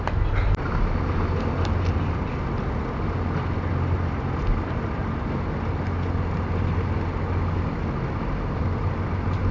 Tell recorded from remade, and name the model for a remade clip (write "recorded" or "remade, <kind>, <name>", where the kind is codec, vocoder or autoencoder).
recorded